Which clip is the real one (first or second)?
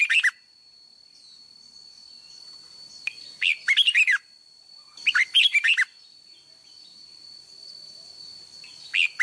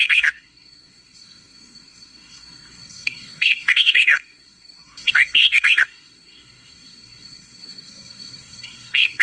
first